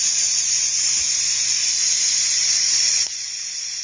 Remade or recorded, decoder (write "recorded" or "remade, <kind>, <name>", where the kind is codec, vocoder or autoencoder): recorded